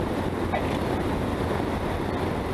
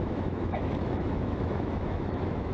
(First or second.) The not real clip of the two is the second